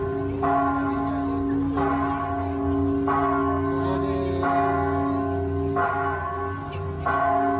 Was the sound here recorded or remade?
recorded